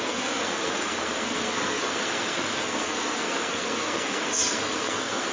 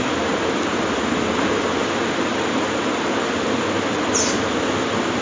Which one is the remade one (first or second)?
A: first